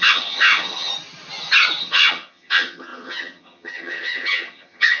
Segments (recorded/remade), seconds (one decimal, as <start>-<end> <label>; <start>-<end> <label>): 0.0-0.9 remade; 0.9-1.8 recorded; 1.8-5.0 remade